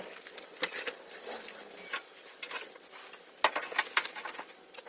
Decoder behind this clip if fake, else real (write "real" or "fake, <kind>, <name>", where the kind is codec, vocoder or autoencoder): real